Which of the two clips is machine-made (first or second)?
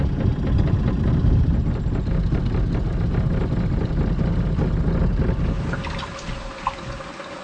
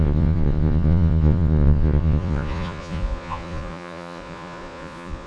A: second